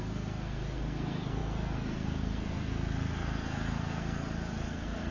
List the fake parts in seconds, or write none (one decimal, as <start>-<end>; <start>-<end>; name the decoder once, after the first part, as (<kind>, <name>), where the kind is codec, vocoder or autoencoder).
0.0-5.1 (codec, SNAC)